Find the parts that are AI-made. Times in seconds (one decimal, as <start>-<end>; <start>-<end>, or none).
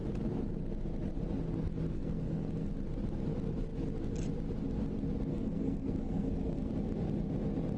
1.9-2.7; 5.3-6.7